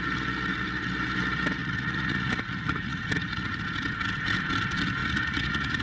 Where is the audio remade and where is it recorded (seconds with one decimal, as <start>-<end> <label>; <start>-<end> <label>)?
0.0-1.6 recorded; 1.6-3.6 remade; 3.6-5.0 recorded; 5.0-5.8 remade